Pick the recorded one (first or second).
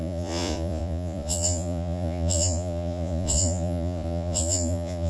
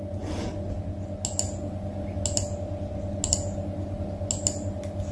second